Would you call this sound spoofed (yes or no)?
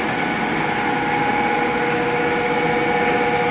no